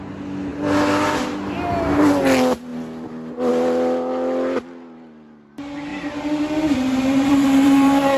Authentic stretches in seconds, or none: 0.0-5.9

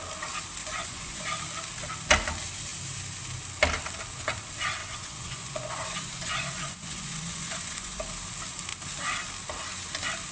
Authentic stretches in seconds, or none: 0.0-0.6; 1.3-4.8; 8.0-10.3

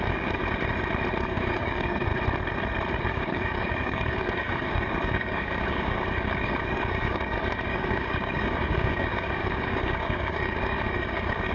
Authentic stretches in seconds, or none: 0.4-1.2; 2.1-3.0

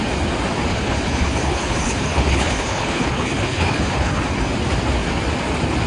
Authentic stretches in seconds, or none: 0.0-0.7; 4.2-5.9

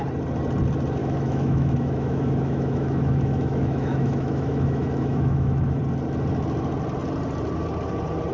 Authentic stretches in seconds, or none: 0.0-1.0; 5.8-8.3

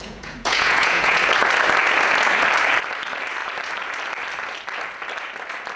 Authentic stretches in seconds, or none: 1.2-5.8

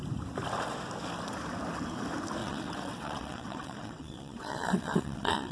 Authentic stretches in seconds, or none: 0.0-2.4

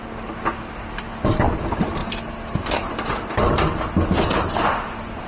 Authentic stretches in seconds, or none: 0.0-5.3